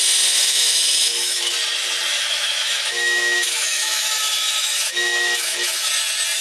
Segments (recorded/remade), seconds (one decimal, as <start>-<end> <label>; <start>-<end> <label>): 0.0-0.5 recorded; 0.5-1.5 remade; 1.5-2.1 recorded; 2.1-5.9 remade; 5.9-6.4 recorded